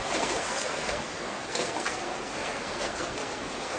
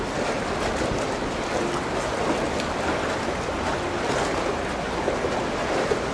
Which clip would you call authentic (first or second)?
second